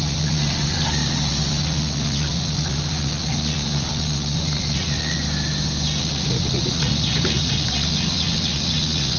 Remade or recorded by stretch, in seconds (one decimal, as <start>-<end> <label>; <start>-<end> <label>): 0.0-5.2 remade; 5.2-6.0 recorded; 6.0-9.2 remade